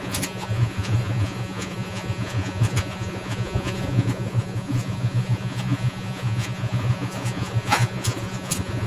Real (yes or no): no